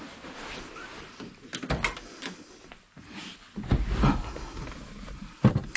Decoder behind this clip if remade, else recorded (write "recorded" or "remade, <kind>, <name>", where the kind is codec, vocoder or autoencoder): recorded